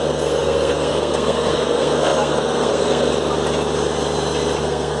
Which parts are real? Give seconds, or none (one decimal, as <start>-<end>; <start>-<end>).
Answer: 3.1-4.6